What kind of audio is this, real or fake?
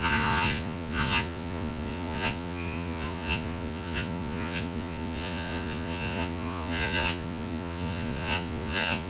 fake